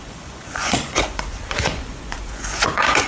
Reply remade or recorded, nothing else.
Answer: remade